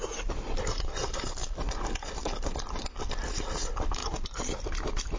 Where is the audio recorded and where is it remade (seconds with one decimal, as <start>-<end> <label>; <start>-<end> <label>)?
0.0-1.4 recorded; 1.4-3.4 remade; 3.4-4.0 recorded; 4.0-4.7 remade; 4.7-5.2 recorded